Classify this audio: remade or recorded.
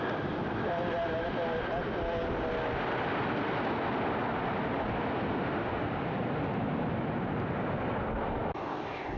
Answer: recorded